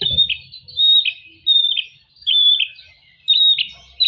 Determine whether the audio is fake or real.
real